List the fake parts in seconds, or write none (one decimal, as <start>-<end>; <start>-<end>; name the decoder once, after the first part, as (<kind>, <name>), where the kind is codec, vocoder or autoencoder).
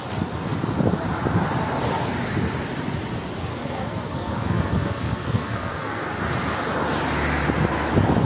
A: 3.5-6.2 (codec, SNAC)